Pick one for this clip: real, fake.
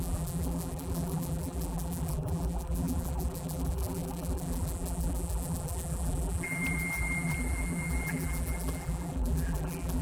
fake